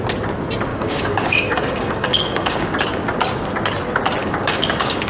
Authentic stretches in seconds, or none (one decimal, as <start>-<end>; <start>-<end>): 0.0-0.7; 2.8-4.2